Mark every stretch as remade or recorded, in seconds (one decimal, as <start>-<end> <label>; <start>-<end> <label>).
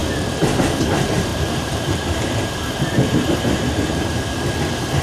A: 0.0-1.3 recorded; 1.3-4.3 remade; 4.3-5.0 recorded